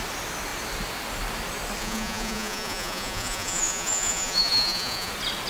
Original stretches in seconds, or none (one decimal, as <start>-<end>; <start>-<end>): 0.0-1.8; 5.1-5.5